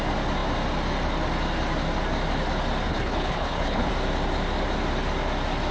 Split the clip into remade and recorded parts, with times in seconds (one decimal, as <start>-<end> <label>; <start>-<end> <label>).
0.0-2.9 recorded; 2.9-3.9 remade; 3.9-5.7 recorded